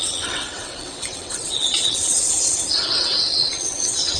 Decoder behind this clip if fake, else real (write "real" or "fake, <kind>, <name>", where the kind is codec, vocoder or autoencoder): fake, vocoder, WaveNeXt